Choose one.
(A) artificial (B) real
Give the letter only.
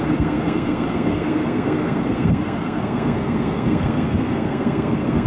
A